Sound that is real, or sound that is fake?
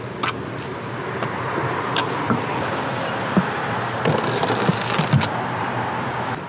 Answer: real